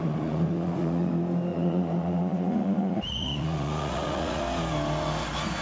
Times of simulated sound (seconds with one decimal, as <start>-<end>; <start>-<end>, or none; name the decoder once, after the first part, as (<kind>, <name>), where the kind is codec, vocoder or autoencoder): 0.0-1.1 (vocoder, Vocos); 1.5-4.4